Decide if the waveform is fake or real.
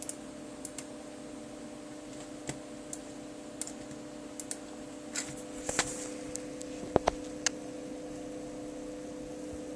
real